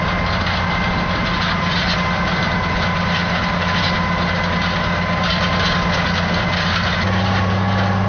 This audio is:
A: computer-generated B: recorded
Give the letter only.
B